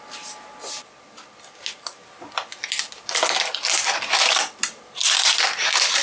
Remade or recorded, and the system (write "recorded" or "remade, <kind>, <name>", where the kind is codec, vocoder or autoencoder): recorded